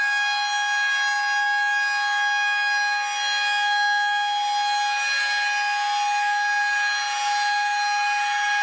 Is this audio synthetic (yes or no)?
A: no